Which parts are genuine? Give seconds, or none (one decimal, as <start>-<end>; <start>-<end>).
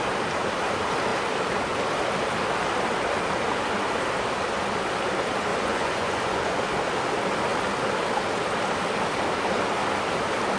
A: 0.0-5.5; 6.6-10.6